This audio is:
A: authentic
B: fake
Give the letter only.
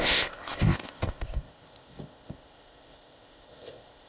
B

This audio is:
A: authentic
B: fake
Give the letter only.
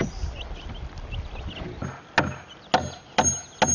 A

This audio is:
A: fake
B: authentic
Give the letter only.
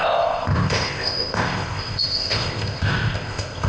A